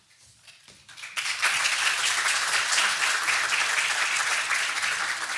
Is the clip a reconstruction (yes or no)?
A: no